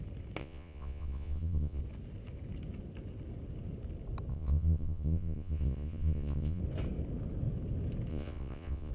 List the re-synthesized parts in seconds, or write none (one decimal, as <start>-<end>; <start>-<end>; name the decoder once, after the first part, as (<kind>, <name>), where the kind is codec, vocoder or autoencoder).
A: 0.4-1.8 (vocoder, Vocos); 4.3-6.6; 8.1-8.9